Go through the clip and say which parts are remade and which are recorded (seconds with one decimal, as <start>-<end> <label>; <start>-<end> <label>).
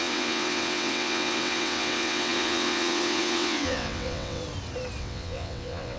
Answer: 0.0-4.4 remade; 4.4-5.0 recorded; 5.0-6.0 remade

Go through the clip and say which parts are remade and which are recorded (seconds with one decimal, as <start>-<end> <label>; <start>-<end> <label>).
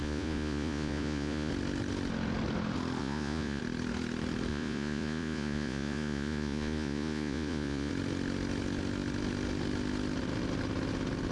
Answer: 0.0-1.5 remade; 1.5-3.0 recorded; 3.0-3.6 remade; 3.6-4.5 recorded; 4.5-7.9 remade; 7.9-11.3 recorded